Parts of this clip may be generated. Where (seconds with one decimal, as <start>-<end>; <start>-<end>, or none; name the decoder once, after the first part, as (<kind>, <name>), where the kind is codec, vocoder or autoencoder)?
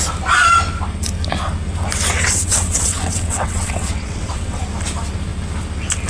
2.1-4.6 (vocoder, WaveNeXt)